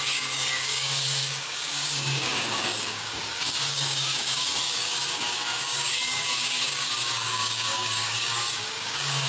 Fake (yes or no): yes